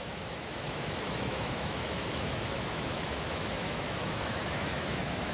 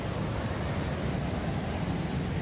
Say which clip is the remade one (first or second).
first